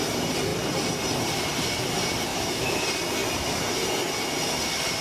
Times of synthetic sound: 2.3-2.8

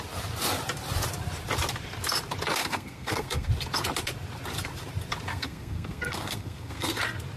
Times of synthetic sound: 2.6-3.5; 5.3-7.0

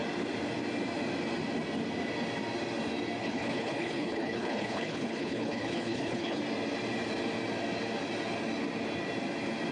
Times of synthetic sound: 3.2-6.4

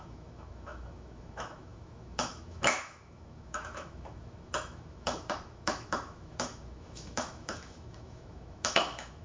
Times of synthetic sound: 0.0-9.2

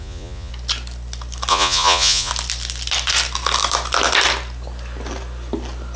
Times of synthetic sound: 0.0-0.5; 1.5-2.3

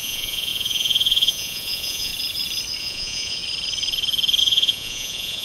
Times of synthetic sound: 0.0-2.1; 2.8-3.4; 4.4-5.4

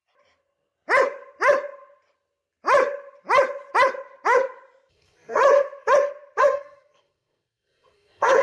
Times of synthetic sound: 4.9-5.4; 6.4-8.4

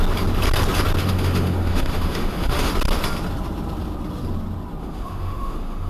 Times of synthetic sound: 1.0-2.7; 4.8-5.9